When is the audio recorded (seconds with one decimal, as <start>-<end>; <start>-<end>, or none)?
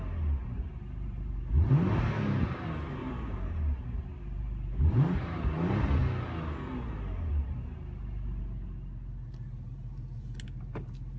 0.0-0.4; 1.7-3.0; 3.5-4.1; 5.4-11.2